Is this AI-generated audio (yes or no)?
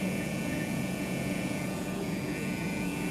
yes